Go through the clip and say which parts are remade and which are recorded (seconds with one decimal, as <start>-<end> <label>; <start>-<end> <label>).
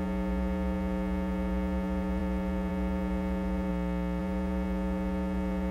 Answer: 0.0-3.7 remade; 3.7-4.2 recorded; 4.2-5.7 remade